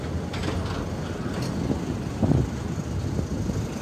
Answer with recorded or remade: recorded